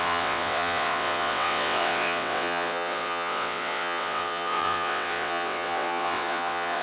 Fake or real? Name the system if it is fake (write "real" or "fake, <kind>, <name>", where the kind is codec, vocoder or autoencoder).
fake, vocoder, WaveNeXt